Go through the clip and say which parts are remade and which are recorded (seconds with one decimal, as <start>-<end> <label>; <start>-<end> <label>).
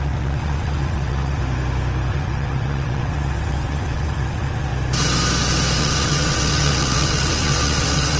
0.0-1.4 remade; 1.4-2.1 recorded; 2.1-4.7 remade; 4.7-5.8 recorded; 5.8-8.2 remade